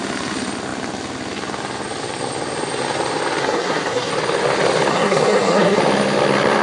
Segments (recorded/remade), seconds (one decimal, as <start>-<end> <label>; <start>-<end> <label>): 0.0-3.4 recorded; 3.4-4.1 remade; 4.1-4.9 recorded; 4.9-5.8 remade; 5.8-6.6 recorded